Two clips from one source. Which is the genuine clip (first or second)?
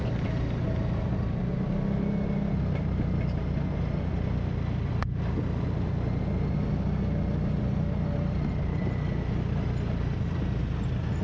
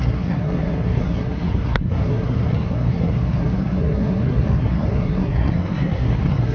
first